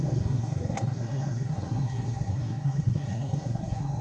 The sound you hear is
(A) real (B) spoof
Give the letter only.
B